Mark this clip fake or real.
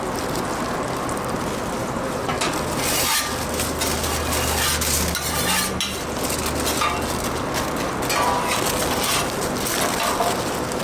real